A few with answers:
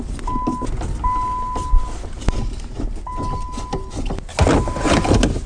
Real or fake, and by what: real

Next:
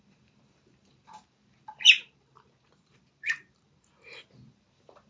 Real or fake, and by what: fake, vocoder, BigVGAN v2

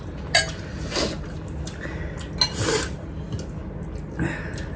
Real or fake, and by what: real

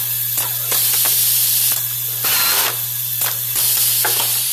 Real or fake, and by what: real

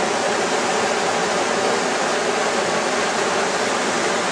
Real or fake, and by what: real